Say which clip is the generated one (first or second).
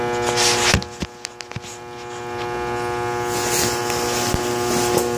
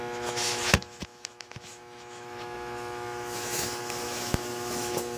second